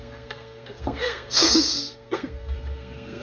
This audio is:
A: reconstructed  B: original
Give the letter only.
A